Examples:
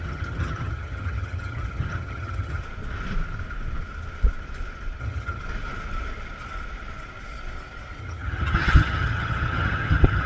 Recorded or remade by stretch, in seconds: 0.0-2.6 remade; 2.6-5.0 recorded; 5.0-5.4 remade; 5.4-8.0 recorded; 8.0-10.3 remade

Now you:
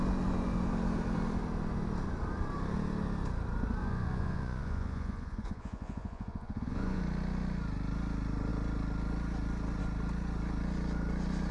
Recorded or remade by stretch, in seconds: 0.0-3.8 recorded; 3.8-7.0 remade; 7.0-11.5 recorded

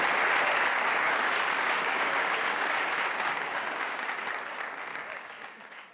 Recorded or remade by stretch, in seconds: 0.0-0.7 recorded; 0.7-4.2 remade; 4.2-4.9 recorded; 4.9-5.9 remade

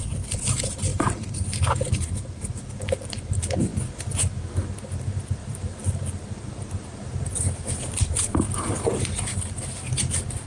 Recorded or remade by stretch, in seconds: 0.0-0.9 recorded; 0.9-2.5 remade; 2.5-5.4 recorded; 5.4-10.1 remade; 10.1-10.5 recorded

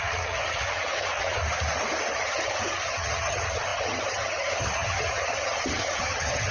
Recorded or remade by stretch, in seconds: 0.0-1.4 remade; 1.4-2.1 recorded; 2.1-6.5 remade

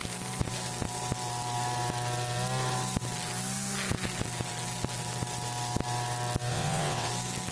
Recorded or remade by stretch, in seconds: 0.0-6.5 recorded; 6.5-7.1 remade; 7.1-7.5 recorded

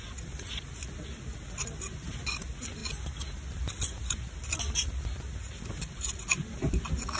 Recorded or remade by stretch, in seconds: 0.0-7.2 recorded